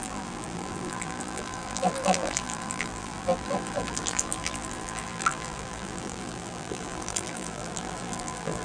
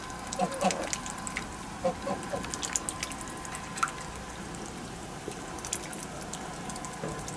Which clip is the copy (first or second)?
first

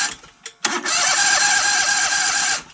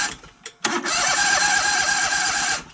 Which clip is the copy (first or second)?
second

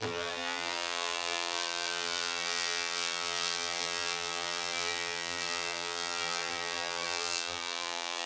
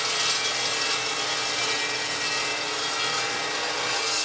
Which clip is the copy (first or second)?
first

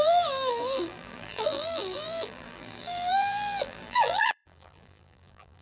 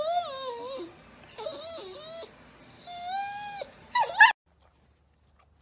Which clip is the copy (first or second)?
first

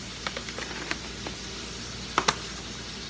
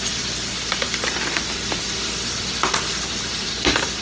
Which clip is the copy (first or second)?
second